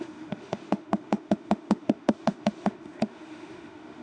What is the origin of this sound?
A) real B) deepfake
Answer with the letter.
B